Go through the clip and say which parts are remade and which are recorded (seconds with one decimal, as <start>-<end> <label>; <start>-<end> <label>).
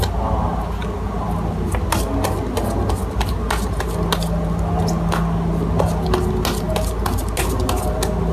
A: 0.0-8.3 recorded